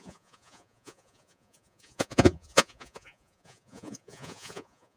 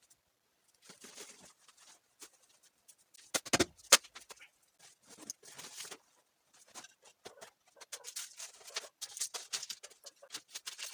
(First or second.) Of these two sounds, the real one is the second